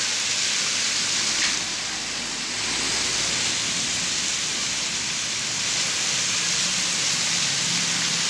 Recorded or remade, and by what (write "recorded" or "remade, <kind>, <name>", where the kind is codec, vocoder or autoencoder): recorded